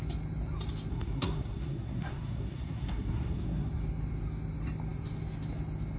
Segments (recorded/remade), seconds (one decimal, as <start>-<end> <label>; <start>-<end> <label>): 0.0-0.9 recorded; 0.9-3.7 remade; 3.7-6.0 recorded